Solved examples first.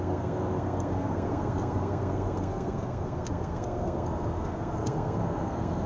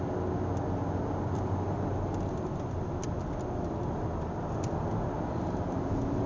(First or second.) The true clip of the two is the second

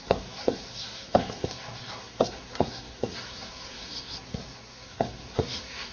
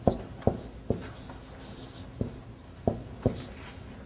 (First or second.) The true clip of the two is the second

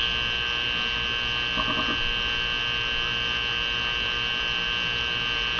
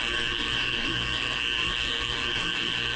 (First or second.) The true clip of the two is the first